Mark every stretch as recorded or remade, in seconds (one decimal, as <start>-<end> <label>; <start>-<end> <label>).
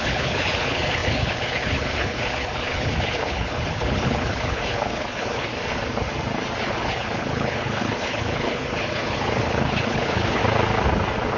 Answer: 0.0-5.5 remade; 5.5-6.6 recorded; 6.6-10.4 remade; 10.4-11.4 recorded